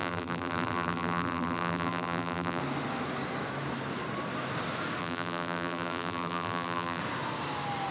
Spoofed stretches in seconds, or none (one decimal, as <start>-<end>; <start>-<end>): 0.0-2.6; 5.0-7.0